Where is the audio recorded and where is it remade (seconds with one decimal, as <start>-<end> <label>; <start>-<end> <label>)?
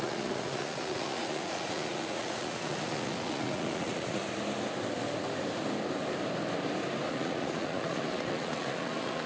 0.0-4.2 remade; 4.2-7.1 recorded; 7.1-9.3 remade